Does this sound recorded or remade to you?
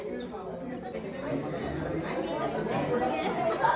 recorded